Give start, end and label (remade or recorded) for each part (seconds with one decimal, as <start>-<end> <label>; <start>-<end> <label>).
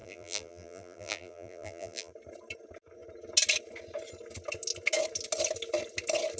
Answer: 0.0-2.1 remade; 2.1-6.4 recorded